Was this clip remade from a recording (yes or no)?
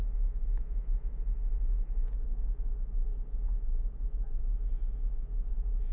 yes